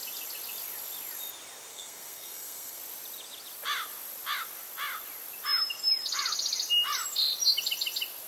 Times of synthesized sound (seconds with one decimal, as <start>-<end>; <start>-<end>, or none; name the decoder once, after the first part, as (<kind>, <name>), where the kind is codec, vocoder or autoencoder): 1.7-2.8 (codec, SNAC)